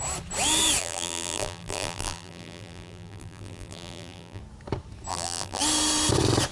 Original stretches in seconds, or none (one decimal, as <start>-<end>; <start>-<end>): 0.0-0.8; 4.4-5.1; 5.6-6.5